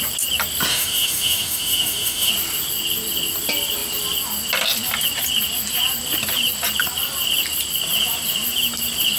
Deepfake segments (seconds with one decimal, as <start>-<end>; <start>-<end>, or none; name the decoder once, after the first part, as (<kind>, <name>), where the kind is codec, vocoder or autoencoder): 0.7-2.3 (autoencoder, DAC-VAE)